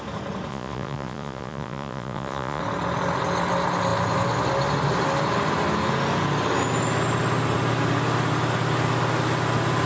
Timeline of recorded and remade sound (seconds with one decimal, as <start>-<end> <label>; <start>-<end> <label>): 0.0-0.5 recorded; 0.5-2.6 remade; 2.6-9.9 recorded